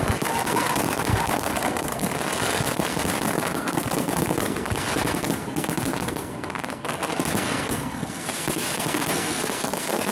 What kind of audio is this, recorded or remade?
remade